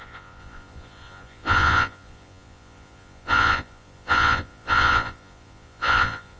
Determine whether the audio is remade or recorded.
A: remade